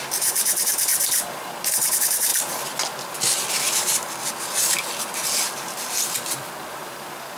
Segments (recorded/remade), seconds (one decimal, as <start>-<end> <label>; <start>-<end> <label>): 0.0-0.9 remade; 0.9-1.7 recorded; 1.7-2.3 remade; 2.3-6.7 recorded; 6.7-7.4 remade